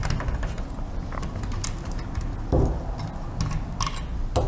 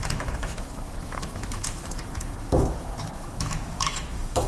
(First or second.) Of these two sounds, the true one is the first